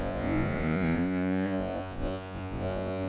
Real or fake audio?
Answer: fake